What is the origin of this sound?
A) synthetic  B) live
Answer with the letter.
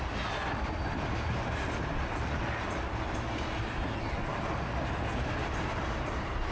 B